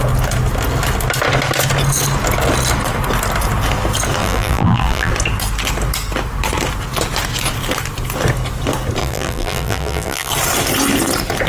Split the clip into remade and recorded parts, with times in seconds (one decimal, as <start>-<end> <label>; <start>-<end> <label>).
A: 0.0-4.2 recorded; 4.2-5.1 remade; 5.1-9.0 recorded; 9.0-10.3 remade; 10.3-11.5 recorded